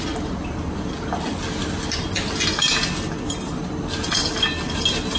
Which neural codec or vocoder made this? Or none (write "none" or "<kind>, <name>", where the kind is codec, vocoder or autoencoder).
none